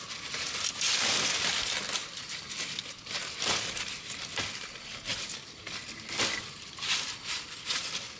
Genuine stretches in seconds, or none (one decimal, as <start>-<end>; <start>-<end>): 0.0-2.0; 2.5-5.1; 5.6-8.2